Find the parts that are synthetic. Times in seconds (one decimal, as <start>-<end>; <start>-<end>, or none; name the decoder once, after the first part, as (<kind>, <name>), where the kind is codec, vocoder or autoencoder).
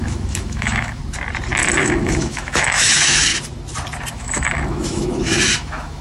0.0-1.0 (autoencoder, DAC-VAE); 1.8-3.3; 4.1-6.0